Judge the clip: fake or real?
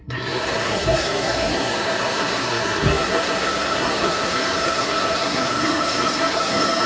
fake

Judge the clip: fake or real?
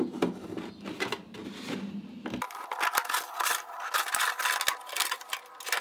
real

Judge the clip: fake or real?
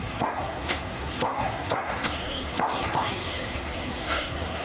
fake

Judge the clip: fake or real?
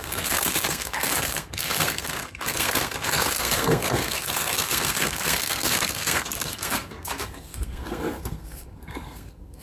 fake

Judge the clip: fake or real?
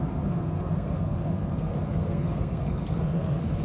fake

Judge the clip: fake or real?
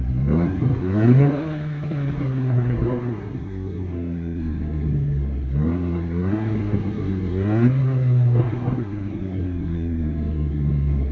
fake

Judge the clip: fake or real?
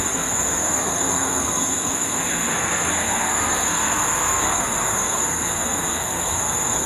fake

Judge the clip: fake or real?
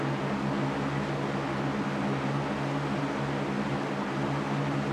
real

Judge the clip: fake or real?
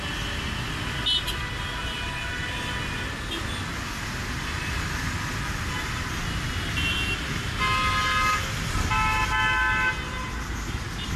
real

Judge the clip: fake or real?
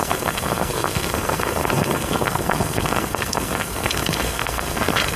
fake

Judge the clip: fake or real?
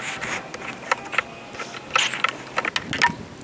real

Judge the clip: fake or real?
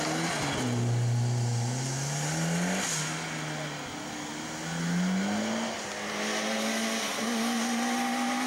real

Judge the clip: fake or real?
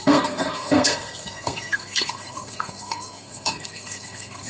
fake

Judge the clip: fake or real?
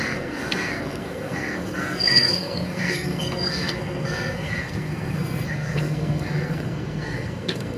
fake